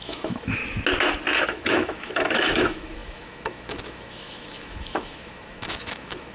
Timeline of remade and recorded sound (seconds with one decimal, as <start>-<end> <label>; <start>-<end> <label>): 0.0-0.6 remade; 0.6-1.4 recorded; 1.4-6.3 remade